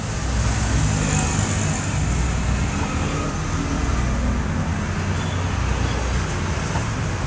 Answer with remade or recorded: recorded